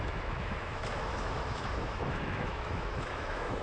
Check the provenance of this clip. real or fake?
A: fake